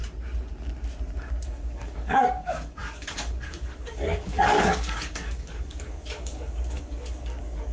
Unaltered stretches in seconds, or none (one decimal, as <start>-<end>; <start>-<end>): 0.0-1.3